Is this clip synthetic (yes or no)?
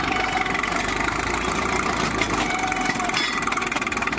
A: yes